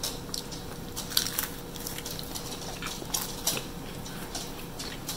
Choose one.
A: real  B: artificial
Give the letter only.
A